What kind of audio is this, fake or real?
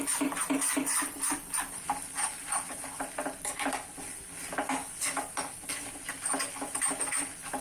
real